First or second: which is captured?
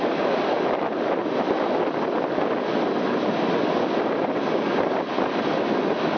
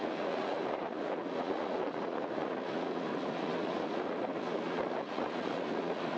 first